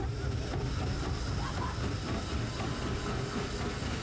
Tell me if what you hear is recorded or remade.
recorded